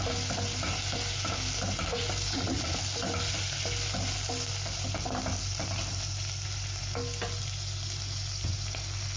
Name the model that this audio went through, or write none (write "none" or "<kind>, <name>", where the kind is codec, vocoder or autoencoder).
none